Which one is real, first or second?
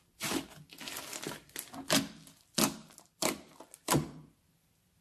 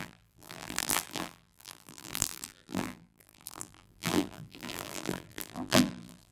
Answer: first